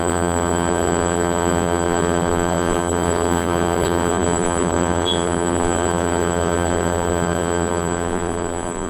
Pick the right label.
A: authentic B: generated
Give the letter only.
B